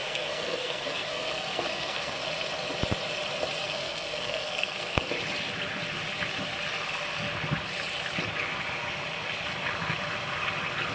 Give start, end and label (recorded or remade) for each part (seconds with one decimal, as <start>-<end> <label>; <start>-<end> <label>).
0.0-2.2 remade; 2.2-3.6 recorded; 3.6-5.1 remade; 5.1-10.9 recorded